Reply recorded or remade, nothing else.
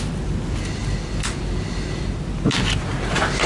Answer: recorded